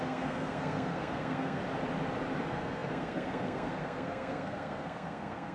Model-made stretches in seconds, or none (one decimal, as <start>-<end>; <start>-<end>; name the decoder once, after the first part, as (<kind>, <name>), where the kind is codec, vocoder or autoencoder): 0.0-1.6 (codec, SNAC); 2.4-5.5